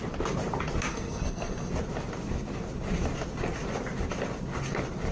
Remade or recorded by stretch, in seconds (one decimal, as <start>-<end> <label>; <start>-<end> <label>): 0.0-0.9 recorded; 0.9-1.7 remade; 1.7-5.1 recorded